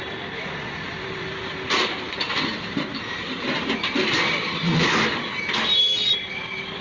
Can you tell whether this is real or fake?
fake